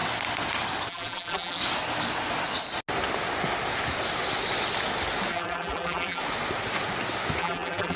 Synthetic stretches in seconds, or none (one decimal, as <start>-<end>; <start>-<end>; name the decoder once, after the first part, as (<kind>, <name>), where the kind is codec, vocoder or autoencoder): 0.9-1.6 (vocoder, BigVGAN v2); 5.3-6.2; 7.4-8.0